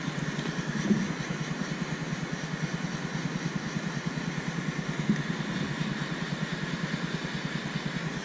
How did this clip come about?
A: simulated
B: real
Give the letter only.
B